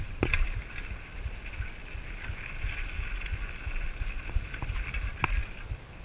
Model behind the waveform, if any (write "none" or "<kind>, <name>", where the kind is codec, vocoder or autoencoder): none